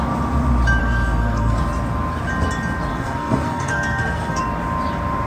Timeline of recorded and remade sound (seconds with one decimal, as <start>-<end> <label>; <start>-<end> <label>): 0.0-0.8 recorded; 0.8-1.6 remade; 1.6-2.9 recorded; 2.9-4.4 remade; 4.4-5.3 recorded